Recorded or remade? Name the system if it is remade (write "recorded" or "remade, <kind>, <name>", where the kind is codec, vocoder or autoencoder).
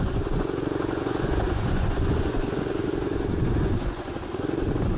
remade, vocoder, Vocos